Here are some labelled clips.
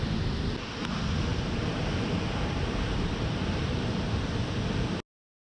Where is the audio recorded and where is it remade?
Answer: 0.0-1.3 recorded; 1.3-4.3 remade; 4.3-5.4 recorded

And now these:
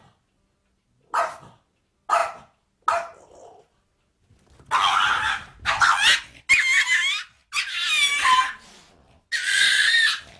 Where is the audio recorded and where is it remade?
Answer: 0.0-10.4 recorded

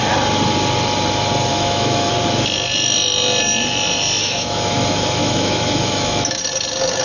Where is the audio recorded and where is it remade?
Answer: 0.0-1.5 recorded; 1.5-2.1 remade; 2.1-4.2 recorded; 4.2-6.4 remade; 6.4-7.0 recorded

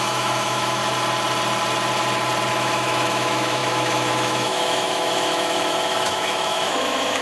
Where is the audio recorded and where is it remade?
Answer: 0.0-0.8 remade; 0.8-2.5 recorded; 2.5-7.2 remade